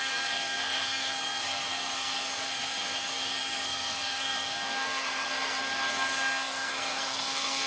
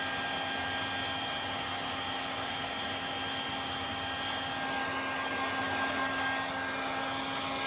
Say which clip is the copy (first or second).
first